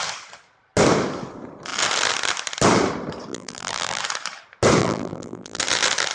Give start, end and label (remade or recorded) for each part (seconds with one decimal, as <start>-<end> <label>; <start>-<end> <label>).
0.0-3.3 recorded; 3.3-4.0 remade; 4.0-4.8 recorded; 4.8-5.6 remade; 5.6-6.1 recorded